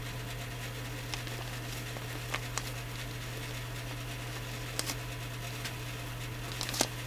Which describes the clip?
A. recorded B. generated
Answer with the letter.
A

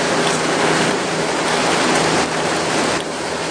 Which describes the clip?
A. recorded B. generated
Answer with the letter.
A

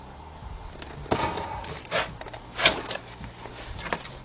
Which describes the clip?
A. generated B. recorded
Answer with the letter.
B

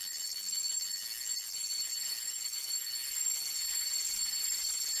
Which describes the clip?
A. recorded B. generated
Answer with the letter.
A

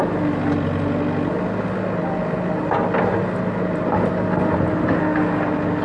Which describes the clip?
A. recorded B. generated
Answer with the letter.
A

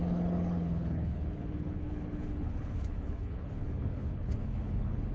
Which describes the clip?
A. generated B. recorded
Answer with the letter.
A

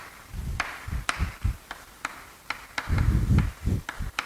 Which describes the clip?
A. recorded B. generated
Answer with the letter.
B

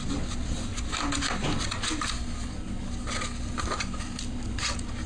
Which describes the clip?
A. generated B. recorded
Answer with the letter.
B